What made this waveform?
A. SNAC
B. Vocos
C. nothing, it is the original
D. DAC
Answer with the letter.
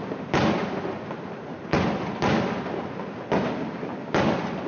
C